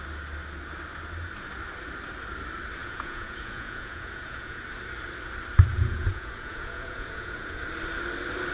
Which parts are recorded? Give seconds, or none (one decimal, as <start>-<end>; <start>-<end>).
0.0-2.8; 4.6-5.7; 7.6-8.5